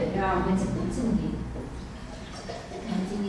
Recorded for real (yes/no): yes